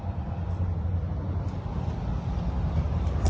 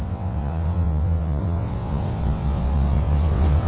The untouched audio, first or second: first